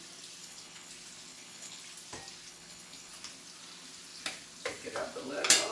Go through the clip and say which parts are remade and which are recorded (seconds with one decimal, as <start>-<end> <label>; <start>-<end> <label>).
0.0-0.4 recorded; 0.4-0.9 remade; 0.9-1.3 recorded; 1.3-1.8 remade; 1.8-2.5 recorded; 2.5-3.1 remade; 3.1-5.7 recorded